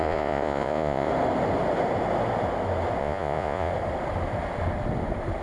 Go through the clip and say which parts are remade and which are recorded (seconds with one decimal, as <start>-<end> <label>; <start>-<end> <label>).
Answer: 0.0-1.1 remade; 1.1-3.0 recorded; 3.0-3.7 remade; 3.7-5.4 recorded